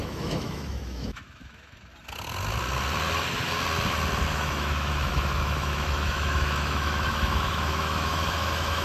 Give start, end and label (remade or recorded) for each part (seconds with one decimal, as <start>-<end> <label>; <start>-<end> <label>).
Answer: 0.0-1.9 remade; 1.9-4.3 recorded; 4.3-8.8 remade